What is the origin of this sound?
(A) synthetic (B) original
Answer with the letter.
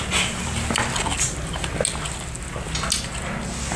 B